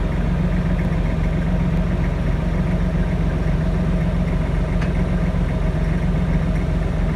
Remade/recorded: recorded